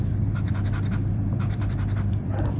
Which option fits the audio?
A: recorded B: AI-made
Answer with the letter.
B